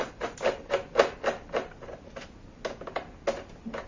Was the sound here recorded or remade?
recorded